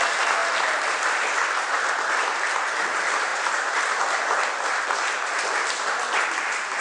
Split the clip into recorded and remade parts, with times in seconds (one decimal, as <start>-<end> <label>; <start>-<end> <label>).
0.0-6.8 recorded